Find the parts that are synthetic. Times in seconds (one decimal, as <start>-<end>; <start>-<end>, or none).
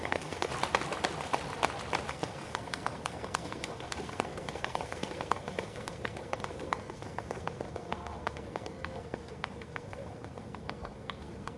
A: 0.0-0.5; 2.1-11.6